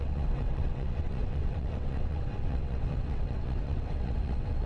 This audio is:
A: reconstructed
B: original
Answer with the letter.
A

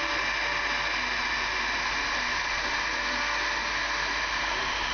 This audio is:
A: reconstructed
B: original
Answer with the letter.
B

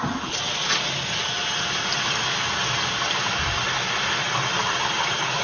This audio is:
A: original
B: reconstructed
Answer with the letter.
A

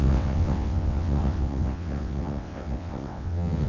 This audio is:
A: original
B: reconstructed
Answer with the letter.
B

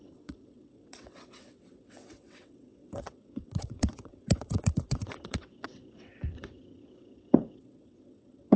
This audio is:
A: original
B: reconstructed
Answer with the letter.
B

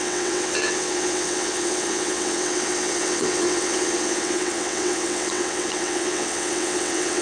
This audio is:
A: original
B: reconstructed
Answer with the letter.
B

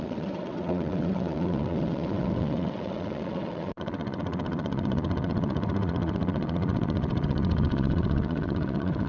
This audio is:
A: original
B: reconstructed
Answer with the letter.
B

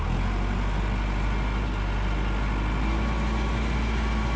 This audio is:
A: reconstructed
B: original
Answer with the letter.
B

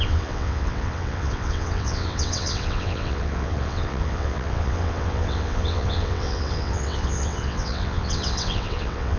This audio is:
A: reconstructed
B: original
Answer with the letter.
A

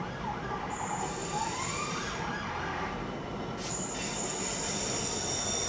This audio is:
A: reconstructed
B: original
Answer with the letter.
B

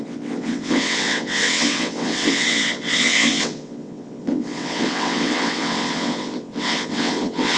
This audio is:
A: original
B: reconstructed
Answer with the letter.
B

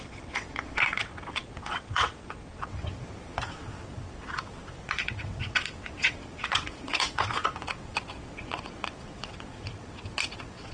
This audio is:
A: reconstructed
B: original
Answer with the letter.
A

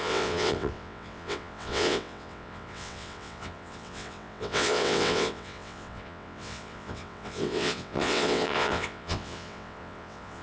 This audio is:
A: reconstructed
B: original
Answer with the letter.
A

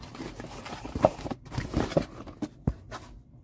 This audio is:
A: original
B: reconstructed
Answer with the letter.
A